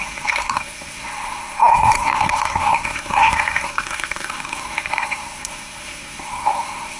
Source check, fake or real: fake